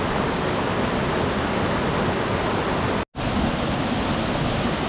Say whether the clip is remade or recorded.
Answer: recorded